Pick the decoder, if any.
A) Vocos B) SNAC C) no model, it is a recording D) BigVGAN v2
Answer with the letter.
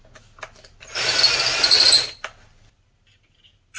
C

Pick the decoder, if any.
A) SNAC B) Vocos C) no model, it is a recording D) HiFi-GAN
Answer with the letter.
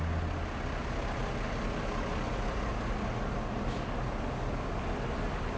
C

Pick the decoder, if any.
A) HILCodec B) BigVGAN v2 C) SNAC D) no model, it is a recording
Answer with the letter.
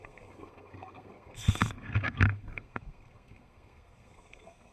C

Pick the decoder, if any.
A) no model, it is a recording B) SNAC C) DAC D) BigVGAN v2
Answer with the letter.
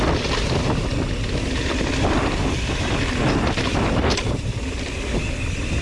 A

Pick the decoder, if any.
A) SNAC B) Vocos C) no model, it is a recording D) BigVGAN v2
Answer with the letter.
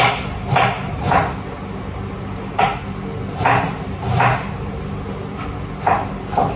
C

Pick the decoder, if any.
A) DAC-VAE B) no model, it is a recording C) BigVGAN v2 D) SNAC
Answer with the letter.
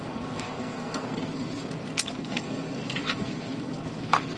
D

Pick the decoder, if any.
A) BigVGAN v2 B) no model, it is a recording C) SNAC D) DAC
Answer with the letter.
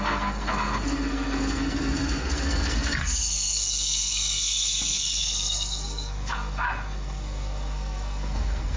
C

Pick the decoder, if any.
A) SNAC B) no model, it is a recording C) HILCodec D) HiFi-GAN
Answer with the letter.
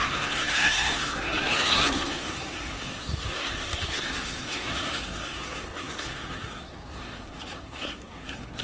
A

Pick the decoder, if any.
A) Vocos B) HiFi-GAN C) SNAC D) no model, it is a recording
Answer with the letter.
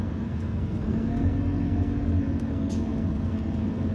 C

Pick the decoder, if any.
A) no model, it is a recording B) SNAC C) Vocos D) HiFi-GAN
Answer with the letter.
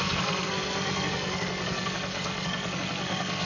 B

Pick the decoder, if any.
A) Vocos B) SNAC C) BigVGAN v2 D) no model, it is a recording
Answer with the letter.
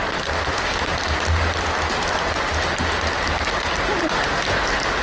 D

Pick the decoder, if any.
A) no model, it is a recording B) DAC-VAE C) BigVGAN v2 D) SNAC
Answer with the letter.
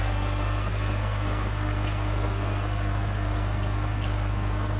D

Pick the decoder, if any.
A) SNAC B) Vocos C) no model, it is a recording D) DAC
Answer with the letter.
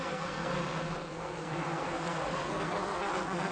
A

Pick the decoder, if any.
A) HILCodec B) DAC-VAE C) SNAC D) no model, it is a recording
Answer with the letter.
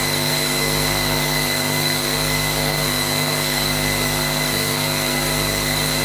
C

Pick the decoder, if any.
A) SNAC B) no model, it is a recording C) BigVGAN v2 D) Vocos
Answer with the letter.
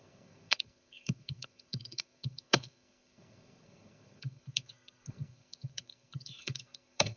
A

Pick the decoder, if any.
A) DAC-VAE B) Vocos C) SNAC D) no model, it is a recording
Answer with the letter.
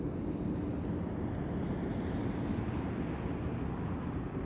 D